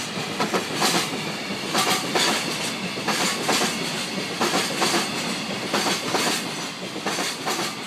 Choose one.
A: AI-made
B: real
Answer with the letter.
B